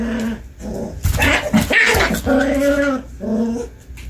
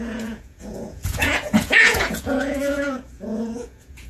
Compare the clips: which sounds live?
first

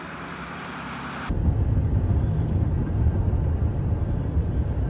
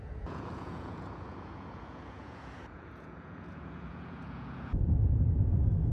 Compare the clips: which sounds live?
first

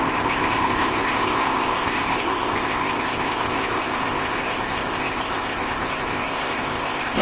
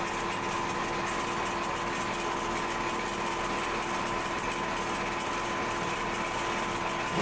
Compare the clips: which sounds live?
second